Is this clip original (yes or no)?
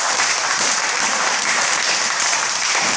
no